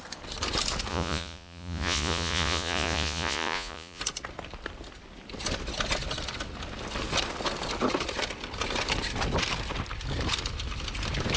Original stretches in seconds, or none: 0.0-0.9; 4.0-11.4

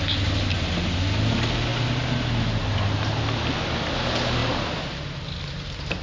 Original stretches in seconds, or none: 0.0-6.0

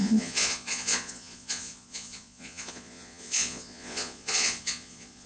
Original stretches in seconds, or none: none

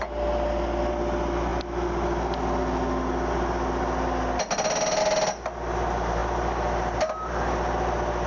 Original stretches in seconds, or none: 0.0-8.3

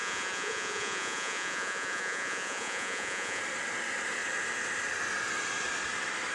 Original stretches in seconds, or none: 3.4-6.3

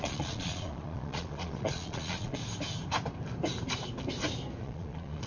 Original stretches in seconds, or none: 2.4-4.6

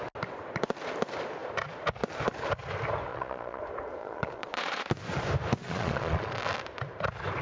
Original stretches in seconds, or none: 0.0-3.1; 3.6-4.0; 4.9-5.6; 6.4-7.4